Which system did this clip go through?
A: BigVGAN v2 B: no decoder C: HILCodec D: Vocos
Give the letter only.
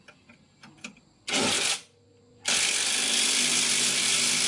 B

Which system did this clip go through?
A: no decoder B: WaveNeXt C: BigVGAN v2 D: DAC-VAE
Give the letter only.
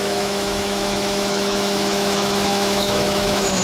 D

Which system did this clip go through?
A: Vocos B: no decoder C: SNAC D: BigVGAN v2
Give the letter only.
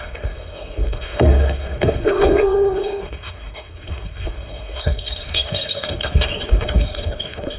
C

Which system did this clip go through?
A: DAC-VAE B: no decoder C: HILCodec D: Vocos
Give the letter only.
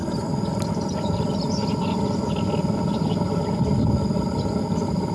B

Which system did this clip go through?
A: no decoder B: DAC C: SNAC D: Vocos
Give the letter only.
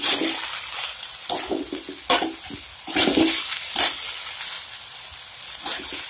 A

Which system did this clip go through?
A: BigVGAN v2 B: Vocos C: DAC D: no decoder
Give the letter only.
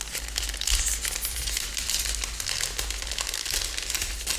D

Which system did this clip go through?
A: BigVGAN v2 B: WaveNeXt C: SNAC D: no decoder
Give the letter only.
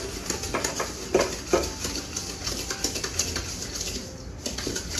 D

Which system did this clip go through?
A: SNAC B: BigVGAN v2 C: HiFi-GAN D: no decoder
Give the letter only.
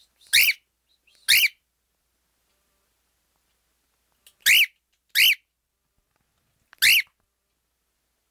D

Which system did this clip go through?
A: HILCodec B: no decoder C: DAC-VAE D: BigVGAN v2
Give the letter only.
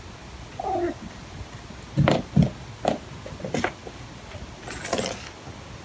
B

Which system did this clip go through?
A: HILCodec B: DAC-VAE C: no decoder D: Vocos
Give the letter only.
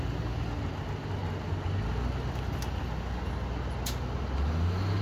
C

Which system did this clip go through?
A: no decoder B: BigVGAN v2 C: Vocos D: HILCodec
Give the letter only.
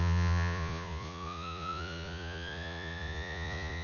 C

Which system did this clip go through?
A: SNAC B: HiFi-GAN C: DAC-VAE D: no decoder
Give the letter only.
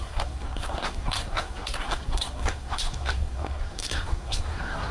A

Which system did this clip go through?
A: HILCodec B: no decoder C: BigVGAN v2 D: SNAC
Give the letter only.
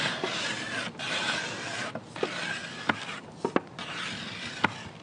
B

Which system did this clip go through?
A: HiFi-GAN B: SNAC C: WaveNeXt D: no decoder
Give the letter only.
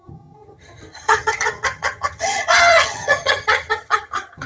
A